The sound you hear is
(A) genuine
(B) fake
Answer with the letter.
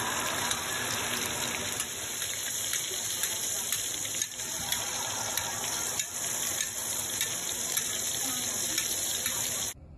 B